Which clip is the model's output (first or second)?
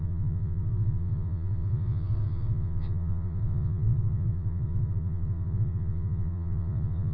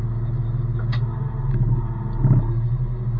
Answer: first